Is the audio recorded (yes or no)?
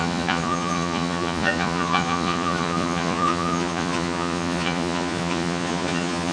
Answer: no